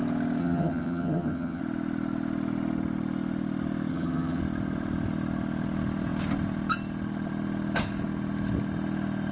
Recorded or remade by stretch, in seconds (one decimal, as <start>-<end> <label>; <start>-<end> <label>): 0.0-0.4 recorded; 0.4-1.6 remade; 1.6-3.9 recorded; 3.9-4.4 remade; 4.4-9.3 recorded